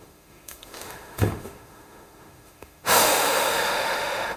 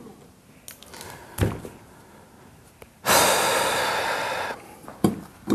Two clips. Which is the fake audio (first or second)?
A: first